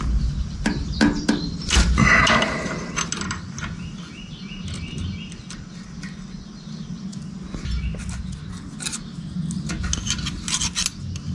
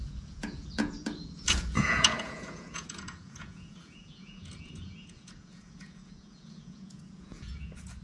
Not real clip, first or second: second